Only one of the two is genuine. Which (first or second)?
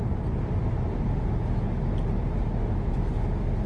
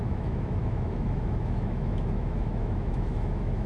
first